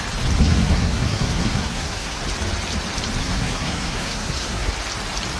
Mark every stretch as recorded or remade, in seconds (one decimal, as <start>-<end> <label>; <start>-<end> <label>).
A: 0.0-0.4 recorded; 0.4-2.2 remade; 2.2-3.2 recorded; 3.2-4.7 remade; 4.7-5.4 recorded